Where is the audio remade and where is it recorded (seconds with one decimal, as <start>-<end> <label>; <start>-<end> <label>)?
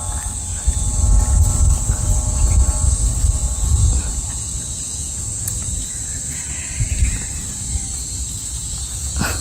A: 0.0-3.4 recorded; 3.4-5.5 remade; 5.5-8.6 recorded; 8.6-9.4 remade